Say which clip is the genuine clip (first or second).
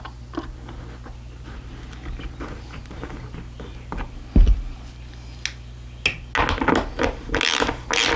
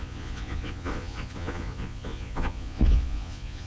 first